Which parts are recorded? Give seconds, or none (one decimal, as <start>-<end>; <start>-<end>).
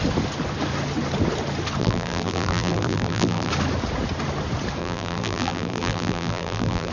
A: 0.0-1.8; 3.5-4.8